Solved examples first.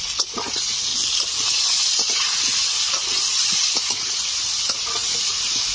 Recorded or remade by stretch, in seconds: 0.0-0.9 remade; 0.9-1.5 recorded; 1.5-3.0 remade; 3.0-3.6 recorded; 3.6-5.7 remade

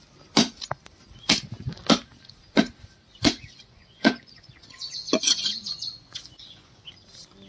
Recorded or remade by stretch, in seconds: 0.0-3.2 recorded; 3.2-6.9 remade; 6.9-7.5 recorded

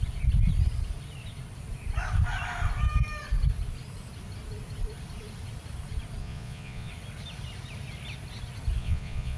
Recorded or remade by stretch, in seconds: 0.0-6.2 recorded; 6.2-6.9 remade; 6.9-8.8 recorded; 8.8-9.4 remade

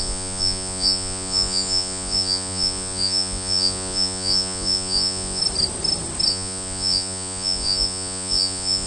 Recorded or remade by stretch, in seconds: 0.0-5.4 remade; 5.4-6.3 recorded; 6.3-8.9 remade

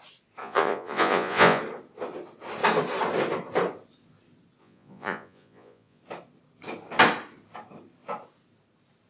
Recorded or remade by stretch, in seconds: 0.0-0.4 recorded; 0.4-1.6 remade; 1.6-4.6 recorded; 4.6-6.0 remade; 6.0-9.1 recorded

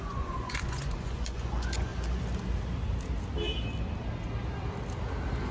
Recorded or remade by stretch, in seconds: 0.0-1.9 remade; 1.9-5.5 recorded

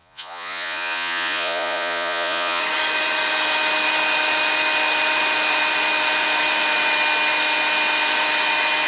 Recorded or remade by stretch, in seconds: 0.0-2.6 remade; 2.6-8.9 recorded

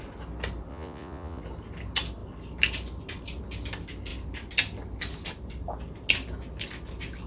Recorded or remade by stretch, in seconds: 0.0-0.7 recorded; 0.7-1.4 remade; 1.4-7.3 recorded